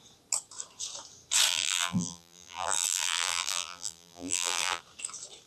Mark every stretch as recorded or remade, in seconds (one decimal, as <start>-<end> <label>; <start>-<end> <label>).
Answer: 0.0-1.5 recorded; 1.5-4.8 remade; 4.8-5.5 recorded